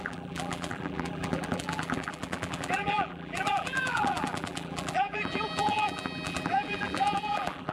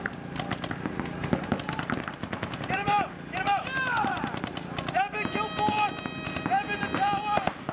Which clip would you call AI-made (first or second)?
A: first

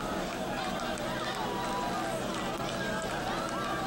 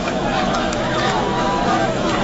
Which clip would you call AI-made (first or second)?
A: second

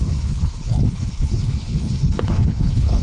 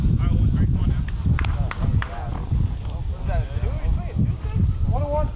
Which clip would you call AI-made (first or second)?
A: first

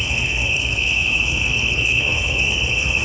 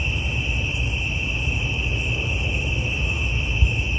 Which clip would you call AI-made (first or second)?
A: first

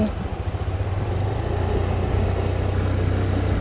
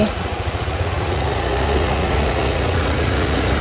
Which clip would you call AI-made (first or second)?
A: second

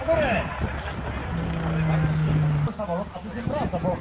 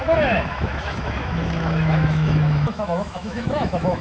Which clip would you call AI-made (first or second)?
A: second